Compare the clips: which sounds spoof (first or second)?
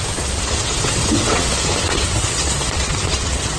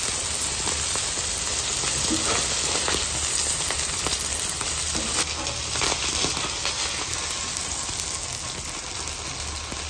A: first